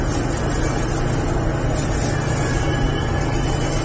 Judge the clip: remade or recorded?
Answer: recorded